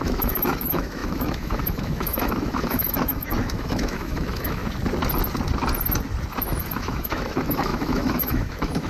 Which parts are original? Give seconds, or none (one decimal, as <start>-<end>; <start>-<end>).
4.6-6.6